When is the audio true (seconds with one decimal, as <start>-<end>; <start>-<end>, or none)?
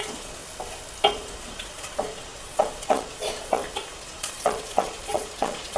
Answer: 0.4-1.1